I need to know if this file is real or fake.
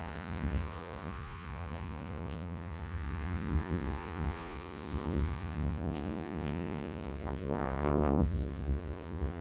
fake